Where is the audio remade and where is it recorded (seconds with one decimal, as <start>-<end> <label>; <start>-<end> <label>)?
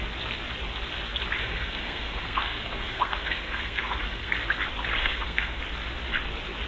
0.0-1.4 recorded; 1.4-4.3 remade; 4.3-5.0 recorded; 5.0-5.6 remade; 5.6-6.7 recorded